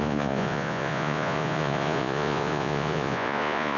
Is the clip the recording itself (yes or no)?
no